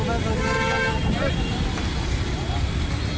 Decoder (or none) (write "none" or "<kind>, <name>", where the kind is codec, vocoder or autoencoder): none